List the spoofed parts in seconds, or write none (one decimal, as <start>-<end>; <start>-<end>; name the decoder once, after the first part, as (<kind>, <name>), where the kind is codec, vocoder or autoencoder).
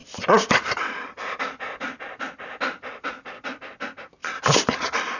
0.0-3.1 (vocoder, BigVGAN v2); 4.2-5.2